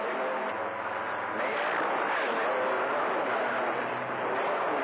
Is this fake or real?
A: real